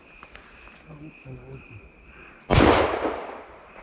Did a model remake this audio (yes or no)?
no